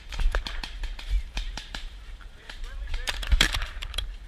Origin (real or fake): fake